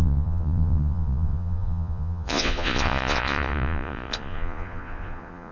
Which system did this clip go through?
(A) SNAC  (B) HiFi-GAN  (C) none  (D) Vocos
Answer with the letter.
D